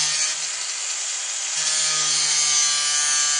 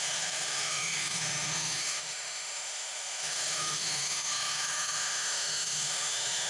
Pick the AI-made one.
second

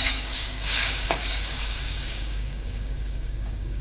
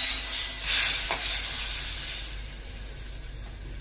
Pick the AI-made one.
first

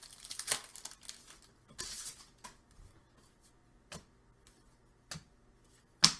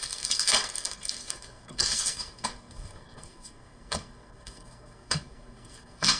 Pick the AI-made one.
second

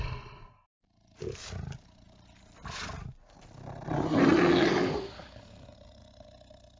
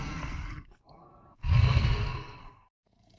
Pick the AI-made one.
second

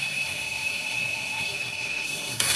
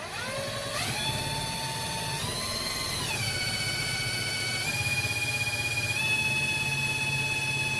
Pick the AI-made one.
first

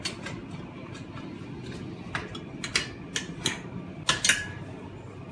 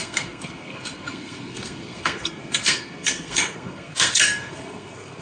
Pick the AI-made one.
second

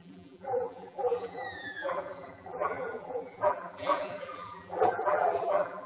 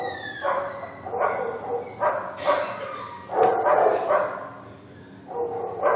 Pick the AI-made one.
first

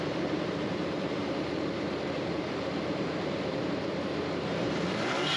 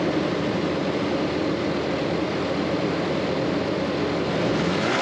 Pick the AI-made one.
first